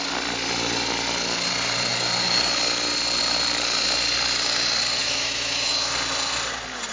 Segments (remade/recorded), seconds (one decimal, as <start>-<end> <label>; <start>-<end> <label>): 0.0-5.0 recorded; 5.0-5.7 remade; 5.7-6.9 recorded